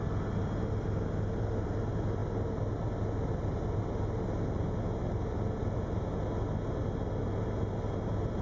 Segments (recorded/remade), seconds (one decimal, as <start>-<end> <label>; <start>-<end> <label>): 0.0-8.4 recorded